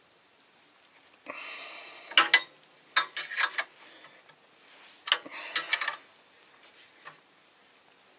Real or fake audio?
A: real